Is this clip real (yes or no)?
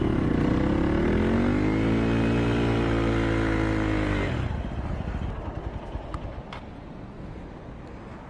yes